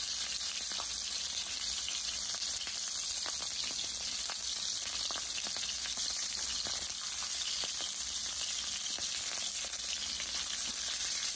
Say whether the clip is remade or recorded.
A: recorded